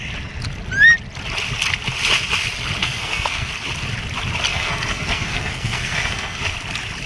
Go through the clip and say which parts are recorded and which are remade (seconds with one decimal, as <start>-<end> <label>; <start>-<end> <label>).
0.0-2.8 recorded; 2.8-3.5 remade; 3.5-4.5 recorded; 4.5-6.4 remade; 6.4-7.1 recorded